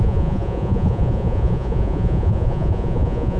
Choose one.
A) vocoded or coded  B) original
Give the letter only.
A